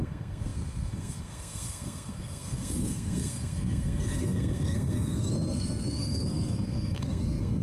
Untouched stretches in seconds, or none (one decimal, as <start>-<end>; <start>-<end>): none